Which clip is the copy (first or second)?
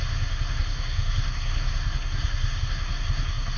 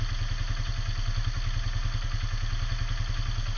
first